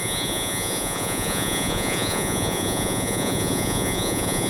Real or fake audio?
fake